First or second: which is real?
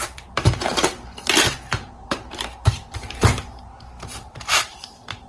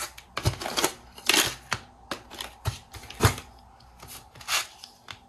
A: second